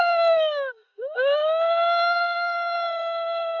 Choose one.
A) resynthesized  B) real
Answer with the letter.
A